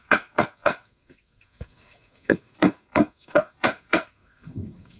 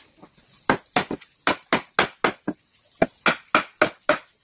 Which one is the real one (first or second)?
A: second